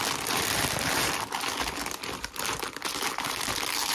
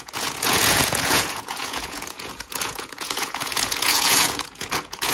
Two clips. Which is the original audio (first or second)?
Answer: first